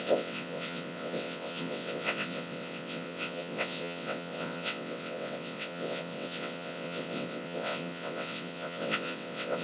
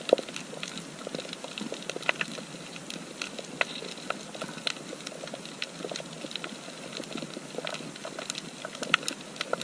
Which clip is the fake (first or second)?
first